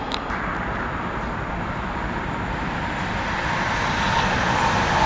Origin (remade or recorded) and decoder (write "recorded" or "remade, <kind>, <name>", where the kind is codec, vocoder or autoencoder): recorded